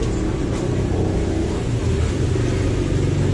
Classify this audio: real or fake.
real